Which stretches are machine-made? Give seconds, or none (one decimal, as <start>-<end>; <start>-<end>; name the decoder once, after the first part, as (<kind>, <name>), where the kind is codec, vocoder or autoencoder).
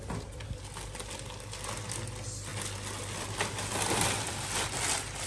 none